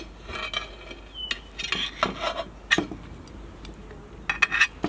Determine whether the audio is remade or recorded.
recorded